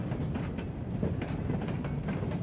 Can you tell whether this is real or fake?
real